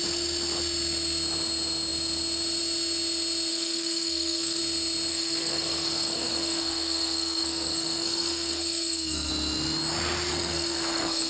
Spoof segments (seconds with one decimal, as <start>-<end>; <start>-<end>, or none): 3.5-4.6; 5.1-9.3; 10.3-11.3